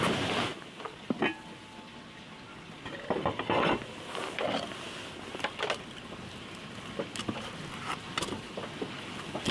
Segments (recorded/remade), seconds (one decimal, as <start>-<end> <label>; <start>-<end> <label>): 0.0-9.5 recorded